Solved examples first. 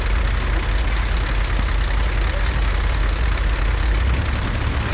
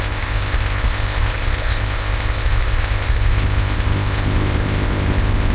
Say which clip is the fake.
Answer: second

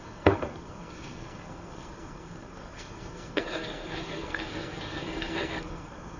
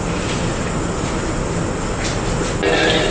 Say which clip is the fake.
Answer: first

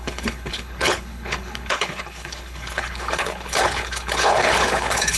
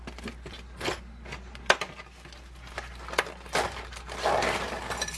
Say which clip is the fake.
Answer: first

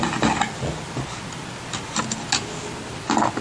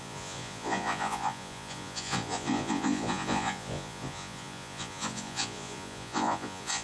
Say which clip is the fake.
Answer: second